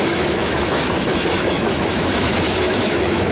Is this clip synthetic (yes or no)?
yes